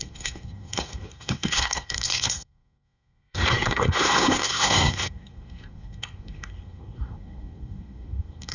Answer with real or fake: fake